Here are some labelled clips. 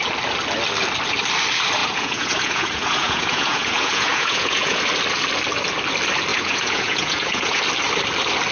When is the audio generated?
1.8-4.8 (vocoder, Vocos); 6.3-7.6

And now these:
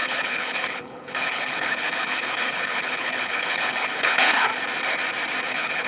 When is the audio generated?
0.0-4.5 (codec, HILCodec); 5.5-5.9

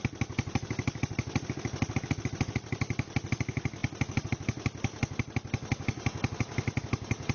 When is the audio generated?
none